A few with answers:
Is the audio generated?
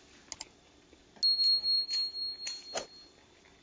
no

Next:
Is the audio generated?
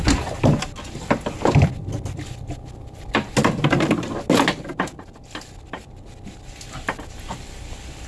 no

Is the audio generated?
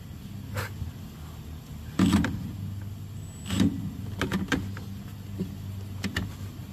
no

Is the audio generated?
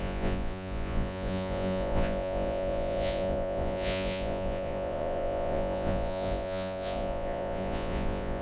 yes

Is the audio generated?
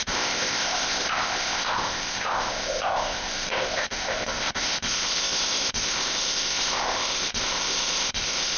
yes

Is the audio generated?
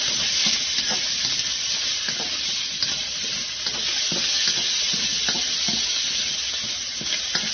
no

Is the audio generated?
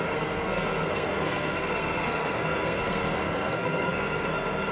yes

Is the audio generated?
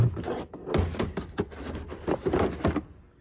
no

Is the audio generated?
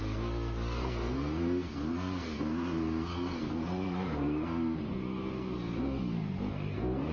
yes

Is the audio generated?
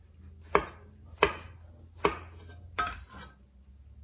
no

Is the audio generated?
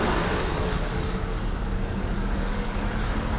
yes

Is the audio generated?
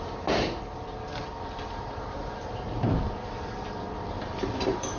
yes